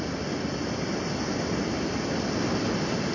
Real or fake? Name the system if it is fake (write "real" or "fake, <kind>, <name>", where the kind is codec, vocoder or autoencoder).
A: real